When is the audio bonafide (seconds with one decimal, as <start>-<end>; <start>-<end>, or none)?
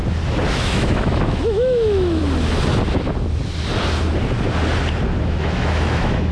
0.0-0.5; 2.2-5.2